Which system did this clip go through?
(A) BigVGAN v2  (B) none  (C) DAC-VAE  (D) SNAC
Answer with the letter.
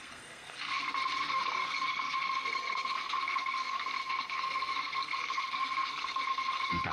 D